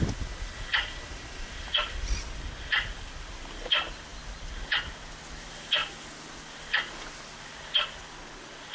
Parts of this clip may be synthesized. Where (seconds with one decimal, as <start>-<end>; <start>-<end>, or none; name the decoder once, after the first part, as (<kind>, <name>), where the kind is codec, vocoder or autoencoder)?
0.7-3.6 (vocoder, BigVGAN v2)